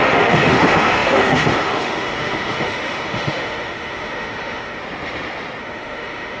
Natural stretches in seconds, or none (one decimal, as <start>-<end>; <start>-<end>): 4.8-5.6